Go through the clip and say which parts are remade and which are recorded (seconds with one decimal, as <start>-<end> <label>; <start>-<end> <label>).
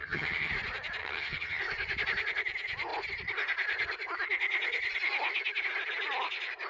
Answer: 0.0-0.5 remade; 0.5-1.0 recorded; 1.0-1.6 remade; 1.6-6.7 recorded